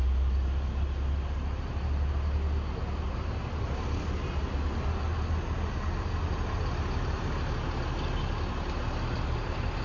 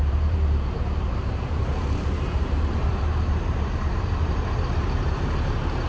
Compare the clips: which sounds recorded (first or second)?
first